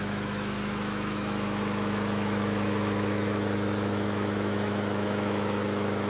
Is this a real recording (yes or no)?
no